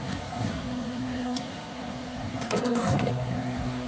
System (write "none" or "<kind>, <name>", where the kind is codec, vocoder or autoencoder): codec, SNAC